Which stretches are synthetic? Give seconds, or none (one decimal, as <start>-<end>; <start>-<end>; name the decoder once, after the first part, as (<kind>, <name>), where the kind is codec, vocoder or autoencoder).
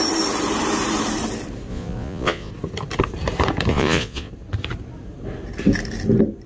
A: 1.7-2.5 (vocoder, Vocos); 3.7-4.3